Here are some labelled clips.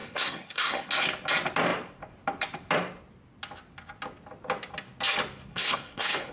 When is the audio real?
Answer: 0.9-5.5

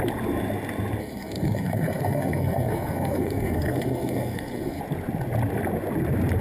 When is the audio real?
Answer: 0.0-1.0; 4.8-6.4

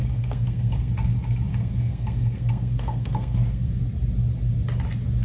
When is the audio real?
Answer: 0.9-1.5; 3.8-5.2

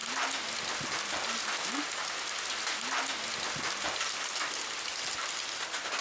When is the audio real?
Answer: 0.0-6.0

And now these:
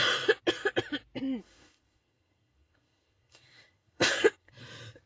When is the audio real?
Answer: 0.0-1.4; 4.5-5.1

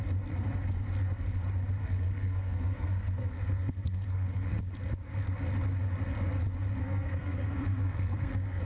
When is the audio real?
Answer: 0.0-1.8; 4.6-6.8